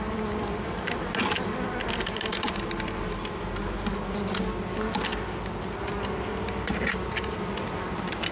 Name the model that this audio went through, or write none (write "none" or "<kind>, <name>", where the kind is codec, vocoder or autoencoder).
none